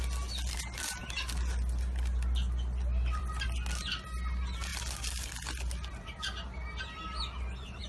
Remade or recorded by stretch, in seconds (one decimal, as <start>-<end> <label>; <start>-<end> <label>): 0.0-7.9 recorded